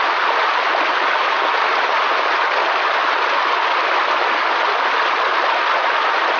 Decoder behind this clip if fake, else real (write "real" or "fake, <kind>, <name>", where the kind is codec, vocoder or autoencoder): real